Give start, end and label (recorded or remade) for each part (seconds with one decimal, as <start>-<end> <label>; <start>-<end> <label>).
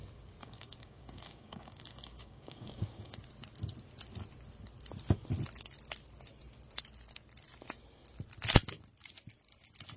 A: 0.0-0.4 recorded; 0.4-3.2 remade; 3.2-10.0 recorded